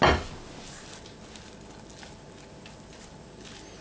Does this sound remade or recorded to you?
recorded